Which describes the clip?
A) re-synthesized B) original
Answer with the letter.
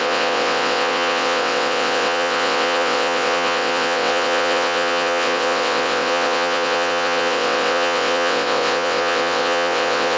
A